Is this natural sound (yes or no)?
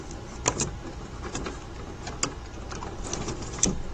yes